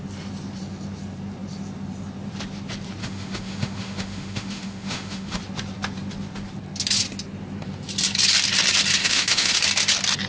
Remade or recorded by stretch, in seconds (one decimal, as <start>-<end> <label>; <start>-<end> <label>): 0.0-3.0 recorded; 3.0-5.4 remade; 5.4-9.0 recorded; 9.0-9.6 remade; 9.6-10.3 recorded